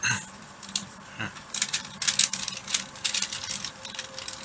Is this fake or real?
fake